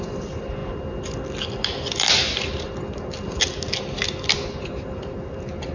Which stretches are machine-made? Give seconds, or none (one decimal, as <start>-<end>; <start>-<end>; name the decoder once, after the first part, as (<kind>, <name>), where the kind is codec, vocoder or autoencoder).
none